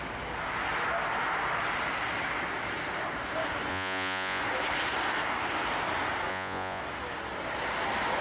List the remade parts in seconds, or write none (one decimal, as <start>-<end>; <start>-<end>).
3.7-4.4; 6.3-6.8